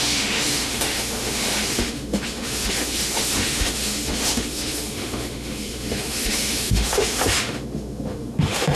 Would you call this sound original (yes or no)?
no